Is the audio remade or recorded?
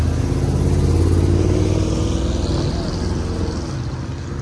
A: recorded